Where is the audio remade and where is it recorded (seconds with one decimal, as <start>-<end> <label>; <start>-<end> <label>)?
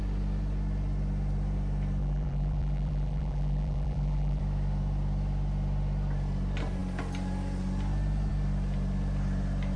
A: 0.0-2.0 recorded; 2.0-4.4 remade; 4.4-9.8 recorded